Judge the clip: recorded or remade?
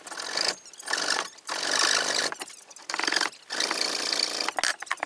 recorded